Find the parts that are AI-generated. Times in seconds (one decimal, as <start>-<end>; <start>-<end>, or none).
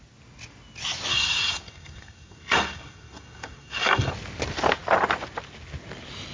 1.1-4.1